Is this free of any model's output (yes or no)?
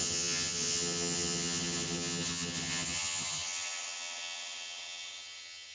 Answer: no